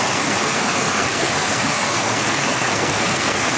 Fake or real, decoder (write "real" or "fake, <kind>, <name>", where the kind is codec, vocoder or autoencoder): fake, codec, SNAC